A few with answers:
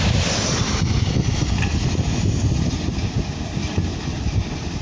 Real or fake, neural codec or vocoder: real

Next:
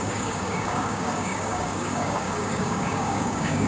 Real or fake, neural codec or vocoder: fake, codec, DAC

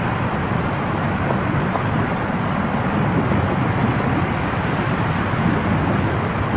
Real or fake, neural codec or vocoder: real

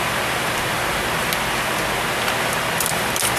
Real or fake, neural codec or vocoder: real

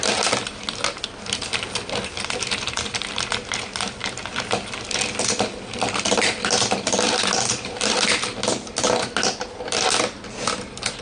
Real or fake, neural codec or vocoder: real